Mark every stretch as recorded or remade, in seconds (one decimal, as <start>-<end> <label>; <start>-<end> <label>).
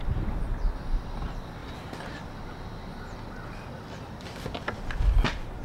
0.0-5.6 recorded